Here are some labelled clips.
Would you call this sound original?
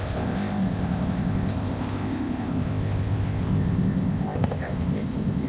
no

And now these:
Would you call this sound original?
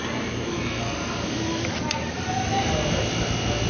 yes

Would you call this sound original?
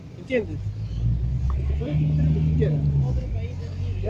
yes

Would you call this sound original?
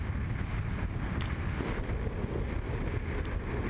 yes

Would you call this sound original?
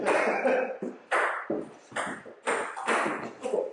yes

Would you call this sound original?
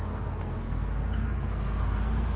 no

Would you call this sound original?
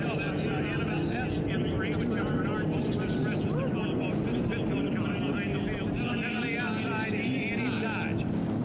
yes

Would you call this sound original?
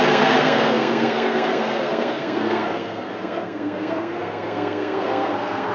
no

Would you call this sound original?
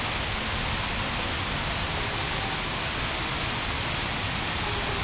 yes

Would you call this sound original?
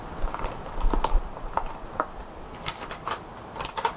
yes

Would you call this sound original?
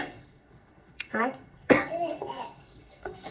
no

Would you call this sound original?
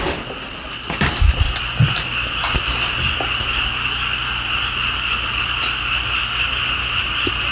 yes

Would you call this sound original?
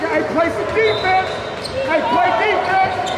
yes